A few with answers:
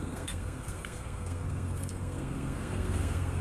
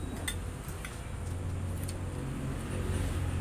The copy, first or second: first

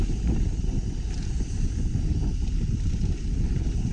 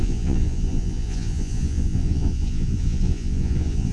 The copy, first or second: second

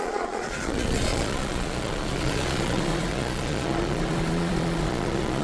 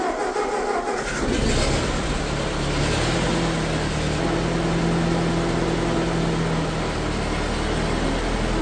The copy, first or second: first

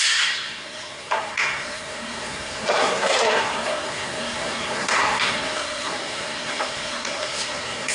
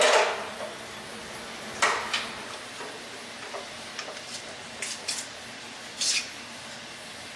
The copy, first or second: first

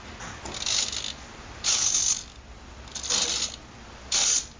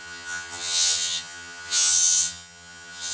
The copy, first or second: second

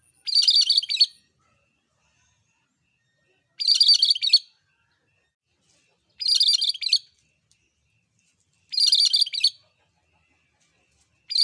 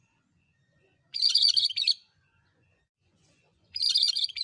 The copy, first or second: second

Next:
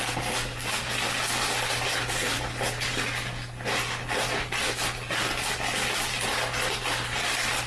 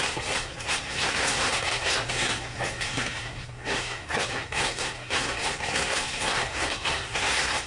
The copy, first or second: second